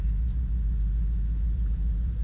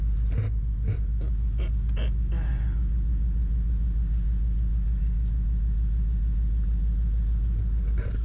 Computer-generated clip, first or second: first